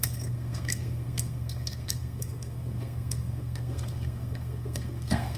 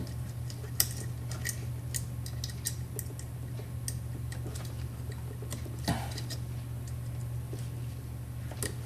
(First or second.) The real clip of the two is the second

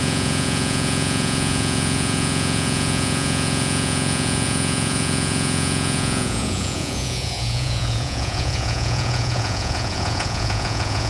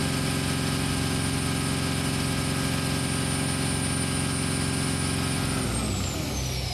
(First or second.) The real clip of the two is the second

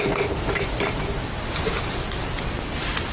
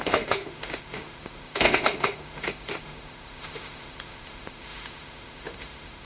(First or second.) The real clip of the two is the first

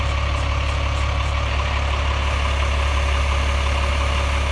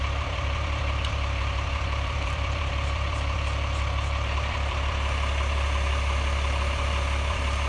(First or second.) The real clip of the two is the first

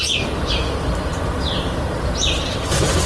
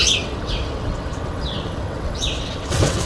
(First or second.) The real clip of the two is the first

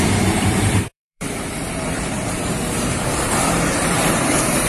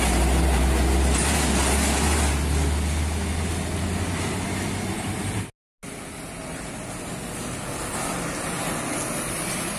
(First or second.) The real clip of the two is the second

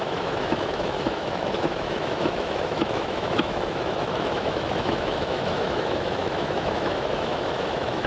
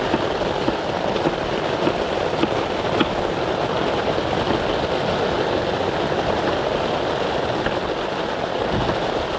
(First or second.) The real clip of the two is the second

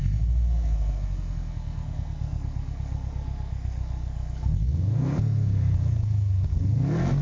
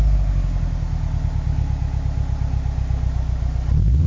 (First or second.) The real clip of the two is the second